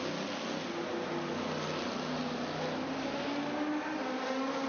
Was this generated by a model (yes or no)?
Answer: no